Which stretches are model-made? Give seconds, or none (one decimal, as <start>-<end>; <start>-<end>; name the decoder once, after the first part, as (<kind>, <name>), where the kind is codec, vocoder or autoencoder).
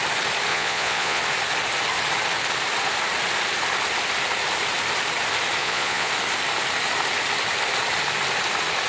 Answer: 0.5-1.2 (vocoder, Vocos); 5.6-6.1